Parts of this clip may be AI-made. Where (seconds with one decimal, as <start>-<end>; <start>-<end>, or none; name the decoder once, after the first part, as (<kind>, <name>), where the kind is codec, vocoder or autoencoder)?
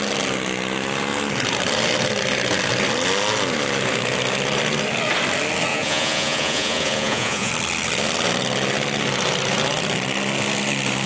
5.7-7.5 (vocoder, Vocos)